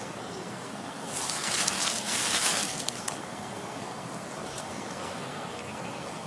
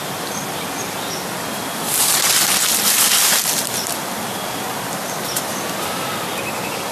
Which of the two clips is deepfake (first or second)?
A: first